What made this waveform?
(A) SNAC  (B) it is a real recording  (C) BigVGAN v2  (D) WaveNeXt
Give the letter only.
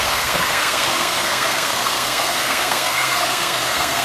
A